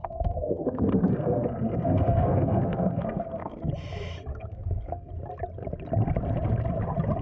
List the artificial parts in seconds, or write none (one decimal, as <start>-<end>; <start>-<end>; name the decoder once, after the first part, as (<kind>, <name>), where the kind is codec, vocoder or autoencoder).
0.0-3.7 (codec, SNAC); 4.3-5.1